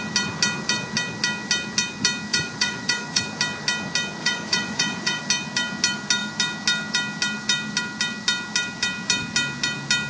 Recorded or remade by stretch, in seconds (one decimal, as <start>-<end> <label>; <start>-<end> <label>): 0.0-2.3 recorded; 2.3-3.2 remade; 3.2-4.2 recorded; 4.2-5.2 remade; 5.2-10.1 recorded